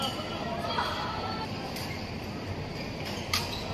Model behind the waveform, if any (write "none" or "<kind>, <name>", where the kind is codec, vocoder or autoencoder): none